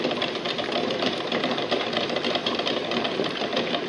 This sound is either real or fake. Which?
fake